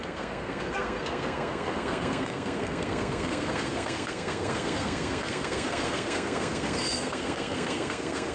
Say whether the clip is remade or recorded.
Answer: remade